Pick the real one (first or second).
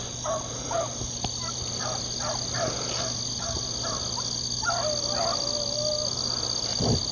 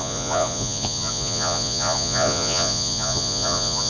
first